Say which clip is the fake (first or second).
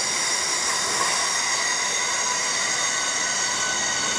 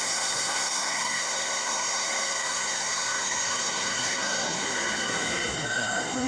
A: second